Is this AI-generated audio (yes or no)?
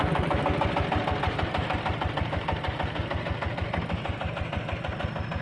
no